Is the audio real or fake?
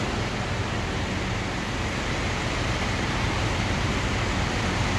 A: real